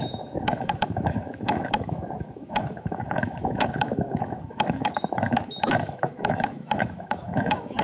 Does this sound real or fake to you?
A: fake